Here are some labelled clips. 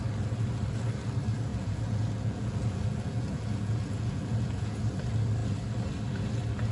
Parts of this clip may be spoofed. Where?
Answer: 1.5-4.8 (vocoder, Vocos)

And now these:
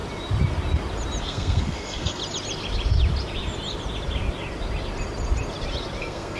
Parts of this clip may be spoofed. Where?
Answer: 1.2-2.2 (codec, SNAC); 6.0-6.4

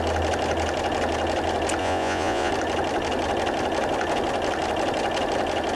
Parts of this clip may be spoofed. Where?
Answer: 1.8-2.5 (vocoder, Vocos)

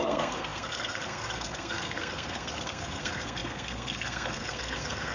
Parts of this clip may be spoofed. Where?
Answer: 0.0-5.1 (codec, SNAC)

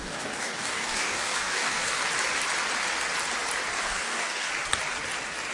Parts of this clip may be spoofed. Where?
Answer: 0.0-2.0 (codec, DAC); 3.8-4.5

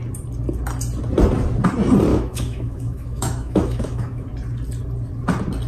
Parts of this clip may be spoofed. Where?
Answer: 2.1-4.3 (autoencoder, DAC-VAE)